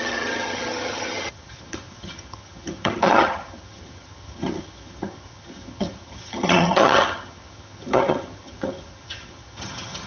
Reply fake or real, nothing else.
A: fake